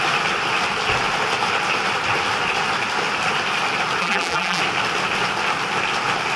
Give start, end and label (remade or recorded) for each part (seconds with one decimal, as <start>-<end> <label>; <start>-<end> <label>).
0.0-4.0 recorded; 4.0-4.6 remade; 4.6-6.4 recorded